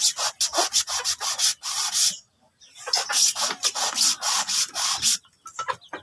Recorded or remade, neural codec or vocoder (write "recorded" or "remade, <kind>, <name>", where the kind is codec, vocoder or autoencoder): recorded